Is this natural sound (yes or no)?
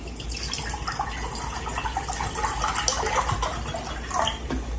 yes